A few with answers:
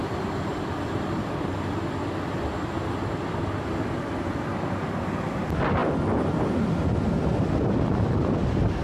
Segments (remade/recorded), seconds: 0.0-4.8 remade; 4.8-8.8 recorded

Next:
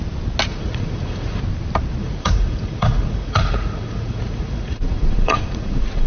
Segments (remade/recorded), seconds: 0.0-0.5 recorded; 0.5-1.4 remade; 1.4-2.0 recorded; 2.0-6.1 remade

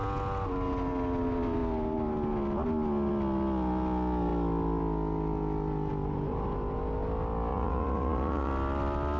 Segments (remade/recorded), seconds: 0.0-7.5 recorded; 7.5-8.5 remade; 8.5-9.2 recorded